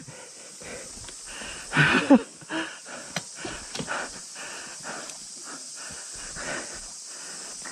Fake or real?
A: real